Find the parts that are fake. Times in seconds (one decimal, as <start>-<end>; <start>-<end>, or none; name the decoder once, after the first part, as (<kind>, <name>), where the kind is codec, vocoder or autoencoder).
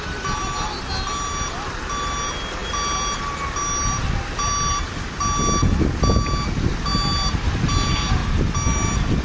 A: none